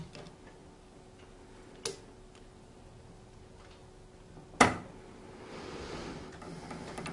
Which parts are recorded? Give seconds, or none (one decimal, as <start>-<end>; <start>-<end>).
0.0-7.1